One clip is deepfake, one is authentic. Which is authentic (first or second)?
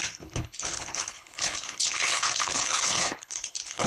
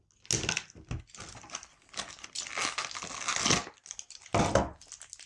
second